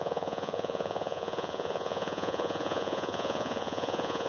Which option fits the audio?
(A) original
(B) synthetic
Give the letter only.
B